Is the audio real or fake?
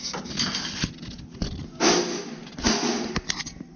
real